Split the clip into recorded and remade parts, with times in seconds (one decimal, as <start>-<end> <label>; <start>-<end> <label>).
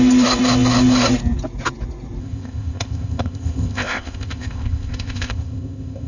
0.0-2.2 recorded; 2.2-6.1 remade